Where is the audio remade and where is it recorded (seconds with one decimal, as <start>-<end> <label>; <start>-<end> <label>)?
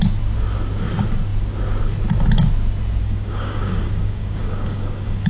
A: 0.0-3.0 recorded; 3.0-5.3 remade